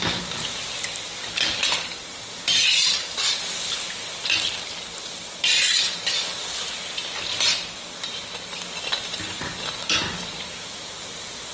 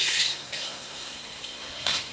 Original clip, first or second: first